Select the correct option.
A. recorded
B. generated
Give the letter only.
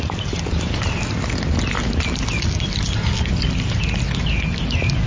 A